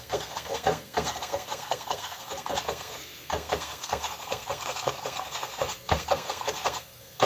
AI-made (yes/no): yes